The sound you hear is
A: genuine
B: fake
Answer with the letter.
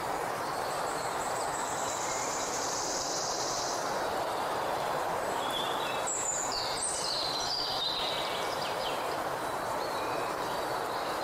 B